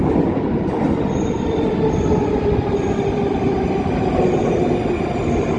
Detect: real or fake real